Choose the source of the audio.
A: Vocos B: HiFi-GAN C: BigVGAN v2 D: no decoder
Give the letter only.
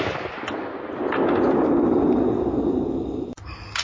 D